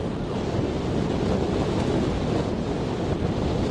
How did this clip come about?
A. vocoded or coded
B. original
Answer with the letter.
B